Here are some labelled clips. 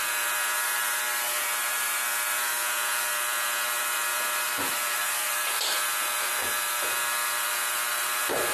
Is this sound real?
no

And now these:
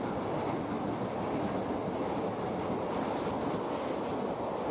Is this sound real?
yes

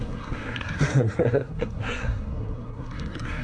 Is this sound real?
no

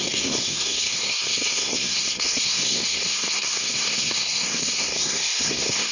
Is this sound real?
no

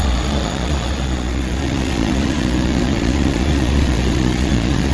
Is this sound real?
no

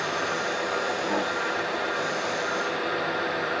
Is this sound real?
no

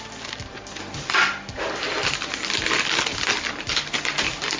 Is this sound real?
yes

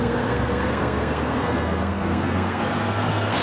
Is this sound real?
no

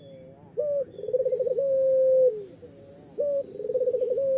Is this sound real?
yes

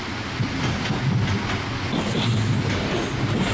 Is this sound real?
yes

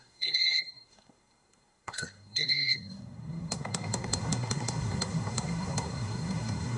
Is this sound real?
no